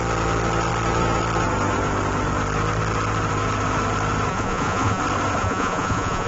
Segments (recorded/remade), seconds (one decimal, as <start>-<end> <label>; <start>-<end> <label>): 0.0-4.3 recorded; 4.3-5.0 remade; 5.0-5.4 recorded; 5.4-6.3 remade